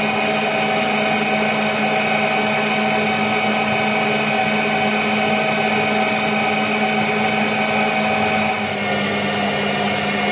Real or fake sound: real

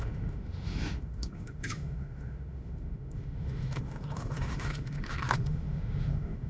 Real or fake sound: fake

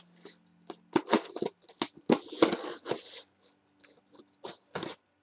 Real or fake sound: real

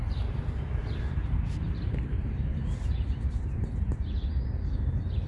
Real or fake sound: fake